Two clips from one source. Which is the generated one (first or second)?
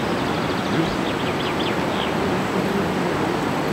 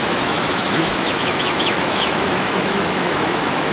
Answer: second